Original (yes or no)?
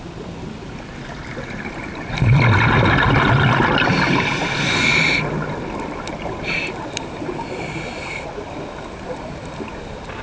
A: yes